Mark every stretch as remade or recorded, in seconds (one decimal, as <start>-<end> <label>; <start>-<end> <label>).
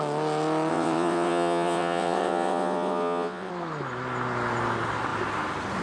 0.0-0.7 recorded; 0.7-3.5 remade; 3.5-5.8 recorded